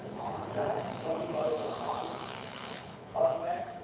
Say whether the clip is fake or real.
fake